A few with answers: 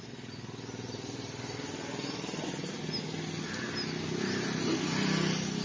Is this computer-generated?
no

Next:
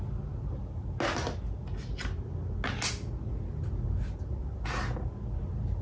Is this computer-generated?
no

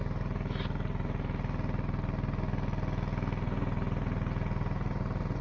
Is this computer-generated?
no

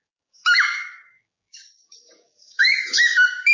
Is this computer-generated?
yes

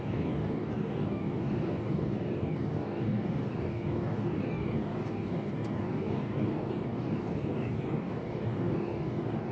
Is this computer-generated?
yes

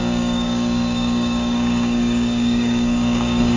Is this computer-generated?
yes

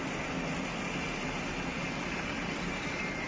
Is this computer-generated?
no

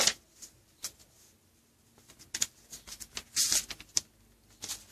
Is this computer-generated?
no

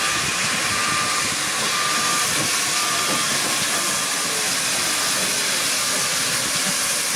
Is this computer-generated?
no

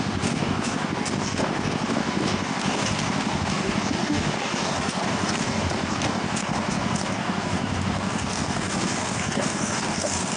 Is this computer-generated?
yes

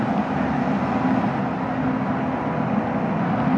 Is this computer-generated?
no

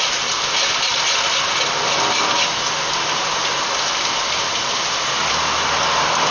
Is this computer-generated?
no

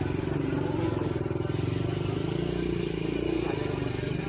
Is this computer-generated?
no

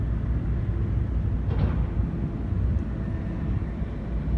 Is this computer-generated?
no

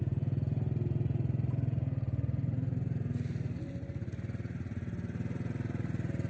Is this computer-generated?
no